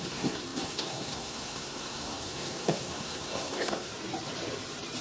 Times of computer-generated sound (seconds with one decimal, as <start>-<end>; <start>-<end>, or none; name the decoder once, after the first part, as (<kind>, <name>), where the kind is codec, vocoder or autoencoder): 0.0-3.9 (codec, SNAC)